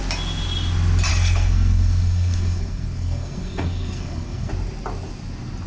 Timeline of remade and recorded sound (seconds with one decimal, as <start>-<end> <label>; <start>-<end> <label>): 0.0-1.1 recorded; 1.1-4.5 remade; 4.5-5.7 recorded